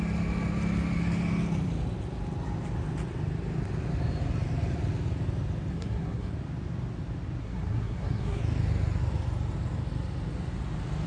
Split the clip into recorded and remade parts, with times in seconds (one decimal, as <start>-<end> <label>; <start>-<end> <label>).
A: 0.0-5.7 recorded; 5.7-6.3 remade; 6.3-7.4 recorded; 7.4-8.4 remade; 8.4-11.1 recorded